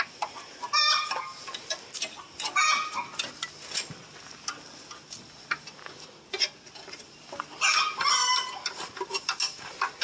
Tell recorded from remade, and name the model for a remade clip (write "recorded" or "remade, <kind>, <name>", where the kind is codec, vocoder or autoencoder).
recorded